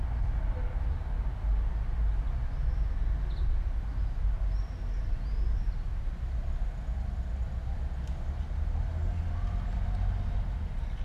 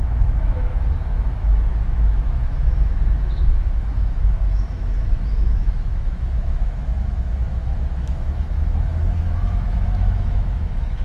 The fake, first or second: second